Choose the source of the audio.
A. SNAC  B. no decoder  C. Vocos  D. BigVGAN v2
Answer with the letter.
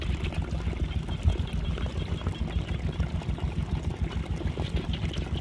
B